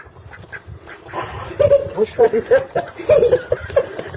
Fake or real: fake